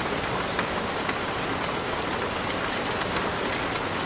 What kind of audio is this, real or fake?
real